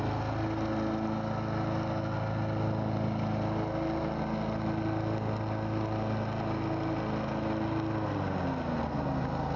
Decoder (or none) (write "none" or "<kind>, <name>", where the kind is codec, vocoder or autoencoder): none